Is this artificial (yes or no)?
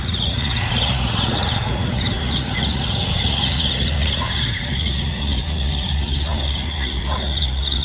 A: yes